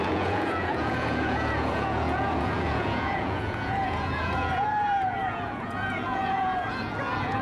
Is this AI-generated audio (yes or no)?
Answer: yes